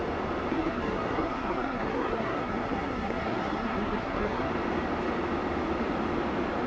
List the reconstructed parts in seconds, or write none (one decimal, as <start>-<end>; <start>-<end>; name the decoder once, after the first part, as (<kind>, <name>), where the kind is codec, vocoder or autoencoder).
0.5-4.5 (codec, SNAC)